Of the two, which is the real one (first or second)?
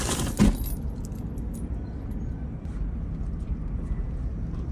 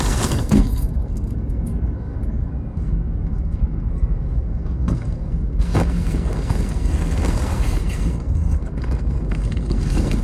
first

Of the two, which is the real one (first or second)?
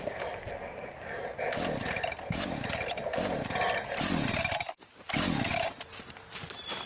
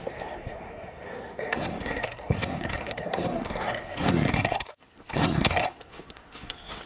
first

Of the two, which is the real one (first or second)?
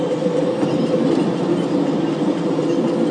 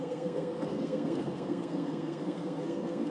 first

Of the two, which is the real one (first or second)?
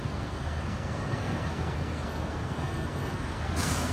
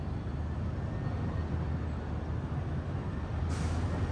second